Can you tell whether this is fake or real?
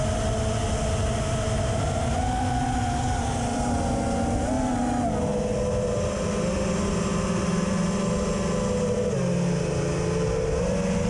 real